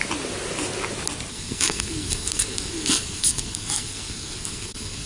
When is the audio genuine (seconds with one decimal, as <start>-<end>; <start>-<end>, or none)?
0.0-1.3